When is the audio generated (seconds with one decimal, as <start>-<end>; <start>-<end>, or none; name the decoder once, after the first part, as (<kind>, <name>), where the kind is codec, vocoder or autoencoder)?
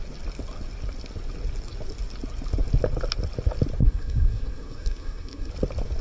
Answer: 3.8-5.5 (codec, SNAC)